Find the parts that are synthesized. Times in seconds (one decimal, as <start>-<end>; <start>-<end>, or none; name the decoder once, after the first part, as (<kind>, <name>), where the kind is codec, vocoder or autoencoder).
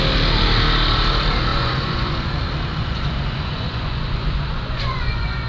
1.5-2.3 (vocoder, Vocos); 2.7-5.5